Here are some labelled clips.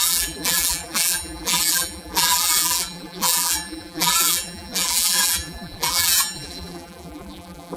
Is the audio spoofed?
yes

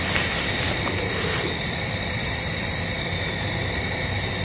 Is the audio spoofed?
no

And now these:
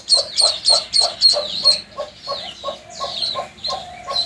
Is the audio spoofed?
no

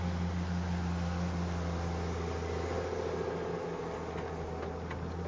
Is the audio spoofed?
no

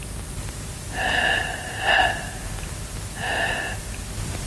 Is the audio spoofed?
no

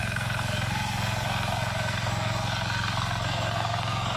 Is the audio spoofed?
yes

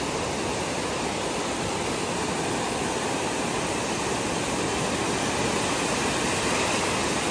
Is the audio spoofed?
no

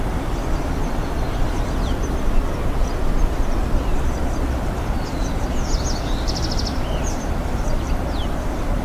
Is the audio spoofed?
no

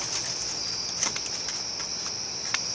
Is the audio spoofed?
no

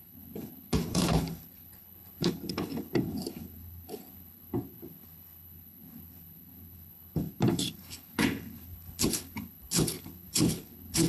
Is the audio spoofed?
yes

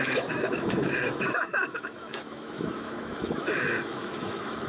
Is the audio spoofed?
yes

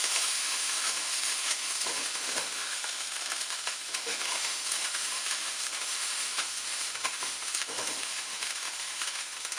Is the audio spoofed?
yes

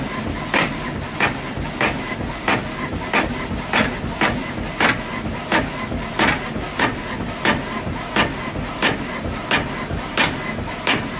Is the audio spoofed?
no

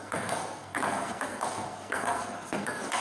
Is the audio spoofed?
yes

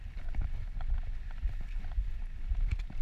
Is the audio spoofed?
no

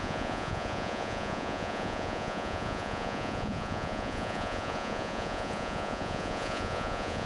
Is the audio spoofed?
yes